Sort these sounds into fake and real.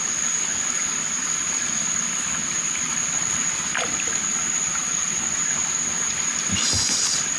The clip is real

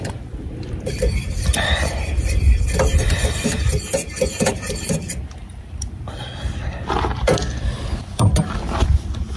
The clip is fake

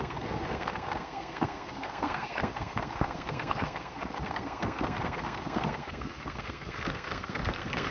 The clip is fake